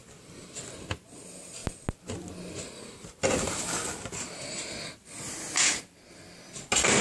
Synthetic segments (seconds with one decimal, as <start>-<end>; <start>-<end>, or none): none